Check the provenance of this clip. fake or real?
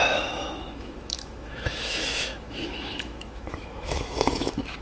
fake